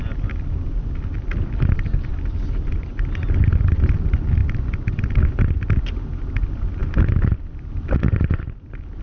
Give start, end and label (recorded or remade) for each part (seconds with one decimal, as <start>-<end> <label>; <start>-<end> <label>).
0.0-9.0 recorded